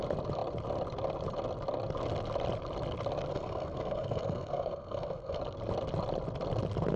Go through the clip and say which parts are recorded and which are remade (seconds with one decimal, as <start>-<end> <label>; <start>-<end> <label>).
0.0-3.3 recorded; 3.3-5.4 remade; 5.4-7.0 recorded